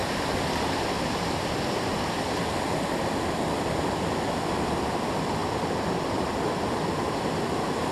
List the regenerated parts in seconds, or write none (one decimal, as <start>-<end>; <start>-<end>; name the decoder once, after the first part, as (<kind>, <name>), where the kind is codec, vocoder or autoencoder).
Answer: 0.0-1.6 (vocoder, BigVGAN v2); 5.4-6.2